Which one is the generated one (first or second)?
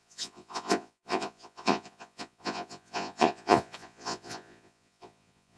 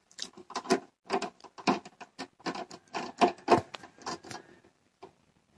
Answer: first